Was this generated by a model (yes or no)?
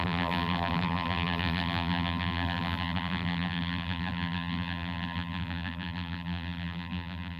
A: yes